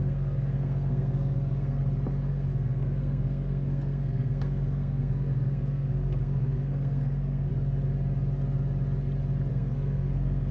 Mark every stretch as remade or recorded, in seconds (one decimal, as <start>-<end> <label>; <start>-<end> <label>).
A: 0.0-1.8 remade; 1.8-2.3 recorded; 2.3-7.5 remade; 7.5-9.5 recorded; 9.5-10.5 remade